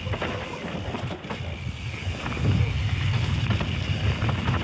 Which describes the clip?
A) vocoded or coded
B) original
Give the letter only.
B